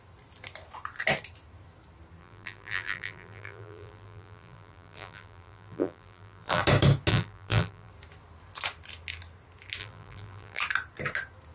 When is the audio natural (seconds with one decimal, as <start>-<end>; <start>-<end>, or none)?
0.0-2.2; 6.6-7.1; 7.9-9.8; 10.6-11.5